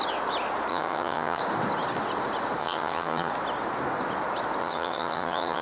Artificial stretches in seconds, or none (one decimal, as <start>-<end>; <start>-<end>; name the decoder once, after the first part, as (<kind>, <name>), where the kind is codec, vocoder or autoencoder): 0.7-1.4 (vocoder, HiFi-GAN); 2.6-3.3; 4.6-5.6